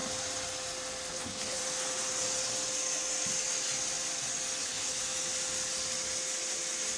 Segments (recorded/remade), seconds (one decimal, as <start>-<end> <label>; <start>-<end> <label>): 0.0-1.1 recorded; 1.1-1.6 remade; 1.6-4.6 recorded; 4.6-5.0 remade; 5.0-7.0 recorded